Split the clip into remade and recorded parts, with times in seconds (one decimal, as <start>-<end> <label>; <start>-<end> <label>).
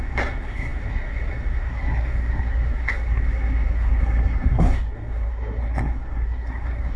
0.0-7.0 remade